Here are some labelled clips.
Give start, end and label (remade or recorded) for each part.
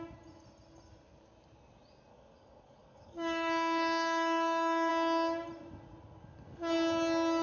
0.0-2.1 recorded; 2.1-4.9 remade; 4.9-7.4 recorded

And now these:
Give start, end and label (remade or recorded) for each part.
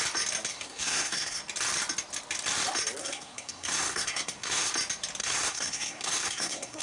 0.0-0.5 recorded; 0.5-1.4 remade; 1.4-3.0 recorded; 3.0-4.7 remade; 4.7-5.2 recorded; 5.2-6.8 remade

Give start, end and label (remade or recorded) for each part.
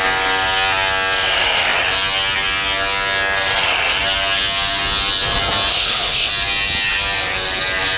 0.0-5.7 recorded; 5.7-6.3 remade; 6.3-8.0 recorded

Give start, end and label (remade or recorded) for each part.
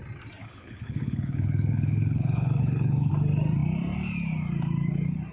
0.0-0.4 recorded; 0.4-3.1 remade; 3.1-5.3 recorded